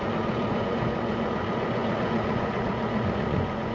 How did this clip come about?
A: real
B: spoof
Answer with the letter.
B